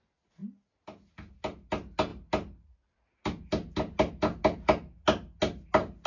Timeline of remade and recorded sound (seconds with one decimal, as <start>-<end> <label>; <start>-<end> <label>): 0.0-6.1 recorded